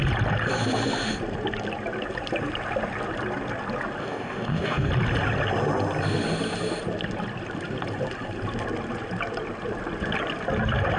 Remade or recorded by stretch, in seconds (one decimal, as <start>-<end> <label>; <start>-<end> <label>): 0.0-4.0 recorded; 4.0-4.9 remade; 4.9-11.0 recorded